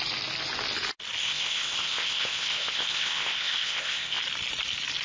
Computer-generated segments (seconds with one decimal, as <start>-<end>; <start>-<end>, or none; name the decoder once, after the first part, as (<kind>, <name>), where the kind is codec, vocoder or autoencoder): 1.2-4.2 (codec, ZipCodec)